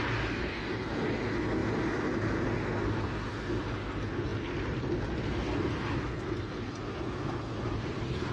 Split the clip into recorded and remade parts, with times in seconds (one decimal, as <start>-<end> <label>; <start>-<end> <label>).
0.0-4.3 recorded; 4.3-8.3 remade